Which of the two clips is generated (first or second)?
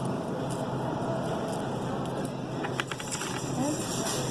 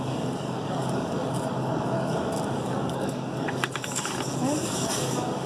second